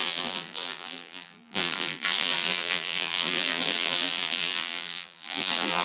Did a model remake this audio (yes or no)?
yes